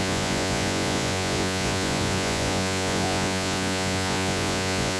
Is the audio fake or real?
fake